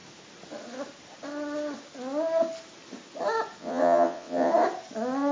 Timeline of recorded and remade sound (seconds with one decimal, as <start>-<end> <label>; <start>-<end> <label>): 0.0-3.6 recorded; 3.6-4.5 remade; 4.5-5.3 recorded